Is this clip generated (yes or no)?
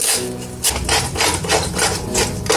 no